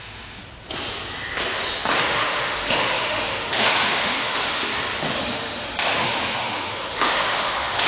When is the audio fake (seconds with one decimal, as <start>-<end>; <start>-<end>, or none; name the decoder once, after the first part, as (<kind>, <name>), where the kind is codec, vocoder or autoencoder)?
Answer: 0.0-0.4 (autoencoder, DAC-VAE); 2.0-4.7; 5.2-7.9